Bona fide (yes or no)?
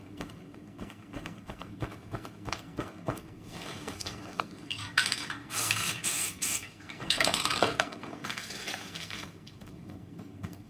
no